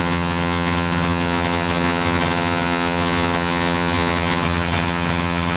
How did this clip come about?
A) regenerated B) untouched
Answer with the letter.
A